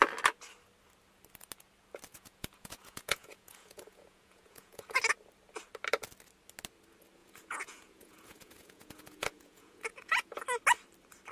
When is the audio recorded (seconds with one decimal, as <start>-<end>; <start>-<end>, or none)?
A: 0.0-2.1; 5.0-7.2; 10.3-11.3